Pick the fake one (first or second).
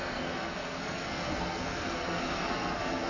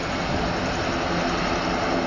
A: first